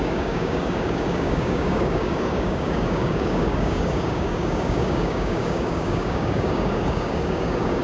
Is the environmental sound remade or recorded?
remade